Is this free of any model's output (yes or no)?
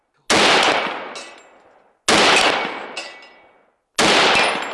yes